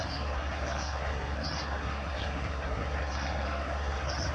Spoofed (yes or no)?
yes